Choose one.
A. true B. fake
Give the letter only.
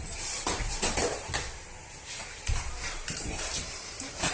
B